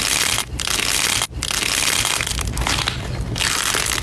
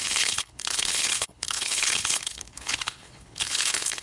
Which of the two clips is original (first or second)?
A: first